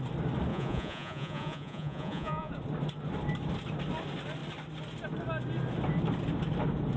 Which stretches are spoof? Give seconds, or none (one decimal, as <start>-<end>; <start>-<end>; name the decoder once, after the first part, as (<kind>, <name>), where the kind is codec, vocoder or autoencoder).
0.5-2.5 (vocoder, Vocos)